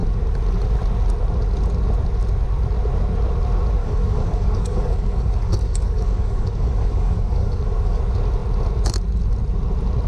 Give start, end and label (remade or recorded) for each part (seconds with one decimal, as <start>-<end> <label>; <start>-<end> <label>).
0.0-3.8 recorded; 3.8-8.0 remade; 8.0-10.1 recorded